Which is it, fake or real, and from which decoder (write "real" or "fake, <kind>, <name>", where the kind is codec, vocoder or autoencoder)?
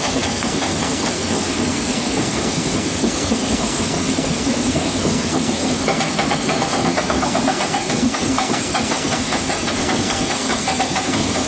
fake, codec, SNAC